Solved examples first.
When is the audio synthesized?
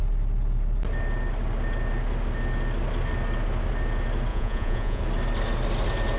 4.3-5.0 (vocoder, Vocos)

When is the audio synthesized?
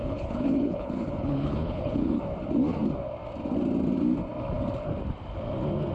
0.0-2.2 (codec, HILCodec)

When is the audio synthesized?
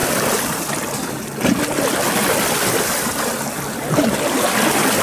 none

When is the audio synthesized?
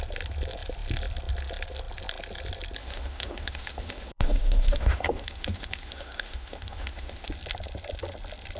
2.8-7.3 (autoencoder, DAC-VAE)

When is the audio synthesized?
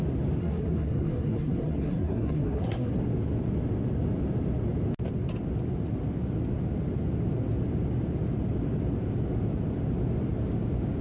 0.4-3.0 (codec, SNAC)